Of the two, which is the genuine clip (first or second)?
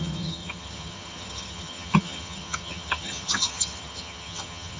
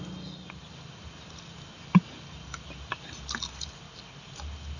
second